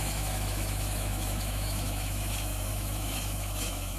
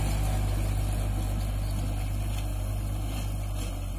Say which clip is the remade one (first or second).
first